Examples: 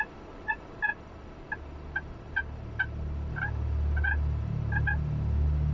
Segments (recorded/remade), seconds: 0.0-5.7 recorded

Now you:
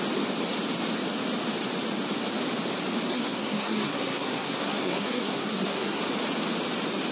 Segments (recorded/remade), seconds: 0.0-3.1 recorded; 3.1-6.0 remade; 6.0-7.1 recorded

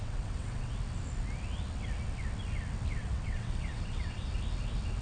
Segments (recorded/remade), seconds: 0.0-0.7 remade; 0.7-3.0 recorded; 3.0-4.3 remade; 4.3-5.0 recorded

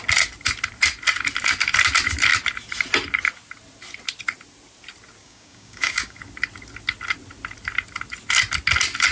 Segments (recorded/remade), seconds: 0.0-5.2 recorded; 5.2-6.2 remade; 6.2-9.1 recorded

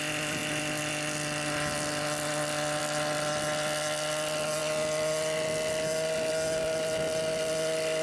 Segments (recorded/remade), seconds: 0.0-8.0 recorded

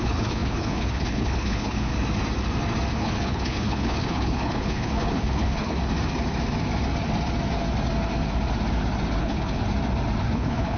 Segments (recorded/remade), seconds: 0.0-1.9 remade; 1.9-2.9 recorded; 2.9-5.8 remade; 5.8-9.2 recorded; 9.2-9.6 remade; 9.6-10.2 recorded; 10.2-10.8 remade